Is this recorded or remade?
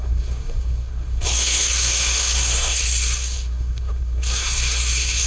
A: remade